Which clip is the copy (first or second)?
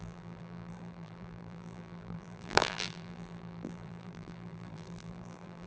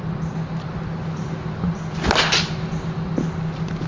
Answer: first